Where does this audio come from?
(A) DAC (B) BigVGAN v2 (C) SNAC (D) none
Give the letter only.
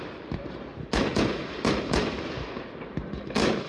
D